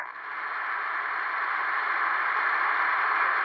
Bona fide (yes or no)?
yes